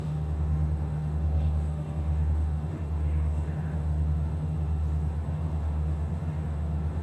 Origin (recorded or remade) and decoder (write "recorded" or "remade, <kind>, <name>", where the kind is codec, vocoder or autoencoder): remade, autoencoder, DAC-VAE